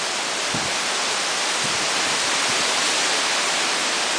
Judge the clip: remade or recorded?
recorded